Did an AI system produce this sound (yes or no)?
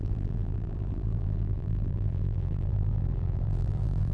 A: yes